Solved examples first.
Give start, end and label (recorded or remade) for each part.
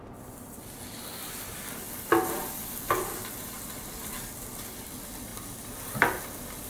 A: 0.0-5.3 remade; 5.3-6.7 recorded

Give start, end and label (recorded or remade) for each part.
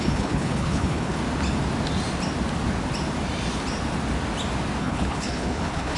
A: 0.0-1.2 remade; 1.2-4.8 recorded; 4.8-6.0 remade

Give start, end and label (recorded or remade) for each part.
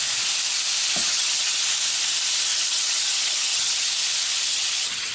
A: 0.0-1.0 recorded; 1.0-1.6 remade; 1.6-2.5 recorded; 2.5-3.9 remade; 3.9-4.5 recorded; 4.5-5.1 remade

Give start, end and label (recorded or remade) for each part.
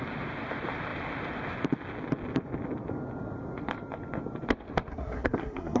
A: 0.0-4.9 recorded; 4.9-5.8 remade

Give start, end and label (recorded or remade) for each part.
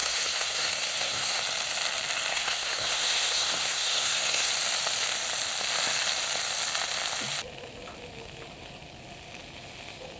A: 0.0-1.4 remade; 1.4-2.3 recorded; 2.3-4.5 remade; 4.5-10.2 recorded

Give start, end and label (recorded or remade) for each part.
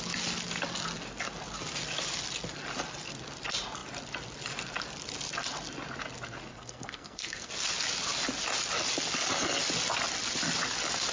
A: 0.0-6.5 recorded; 6.5-7.5 remade; 7.5-11.1 recorded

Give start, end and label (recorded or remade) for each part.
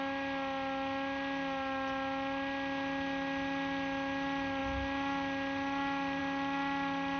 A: 0.0-7.2 recorded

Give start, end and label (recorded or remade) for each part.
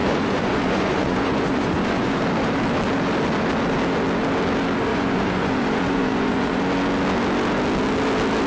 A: 0.0-2.2 remade; 2.2-4.9 recorded; 4.9-6.6 remade; 6.6-8.5 recorded